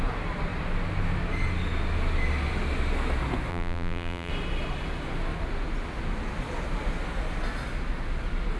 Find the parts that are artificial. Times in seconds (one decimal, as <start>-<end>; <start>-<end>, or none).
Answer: 3.5-4.3